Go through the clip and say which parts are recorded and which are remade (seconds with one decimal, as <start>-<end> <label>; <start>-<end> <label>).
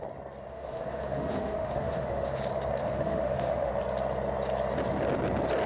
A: 0.0-0.5 recorded; 0.5-2.4 remade; 2.4-2.8 recorded; 2.8-3.7 remade; 3.7-5.7 recorded